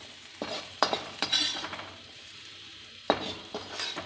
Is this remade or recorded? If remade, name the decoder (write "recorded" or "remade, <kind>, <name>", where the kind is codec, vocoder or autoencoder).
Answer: remade, vocoder, BigVGAN v2